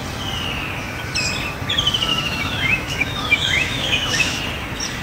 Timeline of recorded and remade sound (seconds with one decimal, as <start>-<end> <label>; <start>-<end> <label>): 0.0-2.1 recorded; 2.1-4.4 remade; 4.4-5.0 recorded